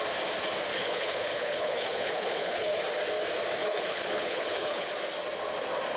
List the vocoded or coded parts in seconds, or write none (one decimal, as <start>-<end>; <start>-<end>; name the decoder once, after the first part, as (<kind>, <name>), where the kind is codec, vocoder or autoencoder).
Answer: 0.7-2.8 (codec, HILCodec); 3.6-4.9